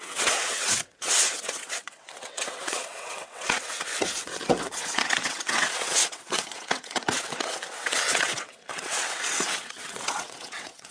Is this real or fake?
fake